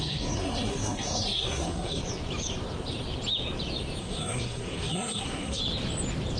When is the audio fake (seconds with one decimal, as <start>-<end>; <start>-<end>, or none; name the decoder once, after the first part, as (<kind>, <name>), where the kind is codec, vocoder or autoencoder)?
0.0-2.0 (codec, SNAC); 4.0-5.6